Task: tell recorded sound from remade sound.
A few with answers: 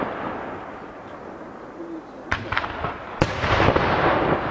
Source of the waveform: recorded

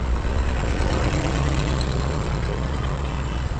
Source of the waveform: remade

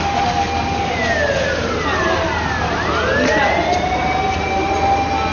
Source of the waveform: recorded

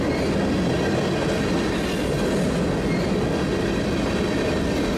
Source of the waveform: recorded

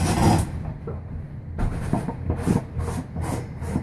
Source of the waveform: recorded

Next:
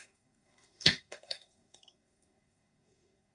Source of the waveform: remade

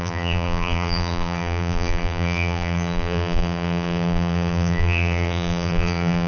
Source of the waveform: remade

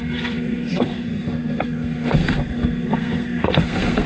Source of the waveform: remade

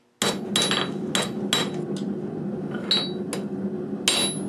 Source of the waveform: recorded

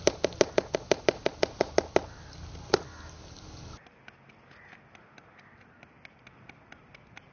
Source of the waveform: recorded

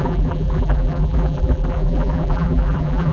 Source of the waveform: remade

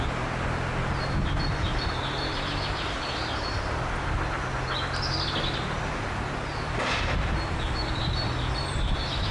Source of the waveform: recorded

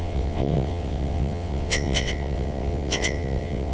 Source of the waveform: remade